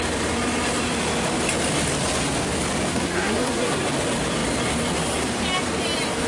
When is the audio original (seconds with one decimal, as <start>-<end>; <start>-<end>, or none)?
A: 0.0-2.9; 3.8-6.3